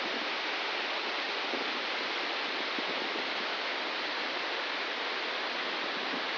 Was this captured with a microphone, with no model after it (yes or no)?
yes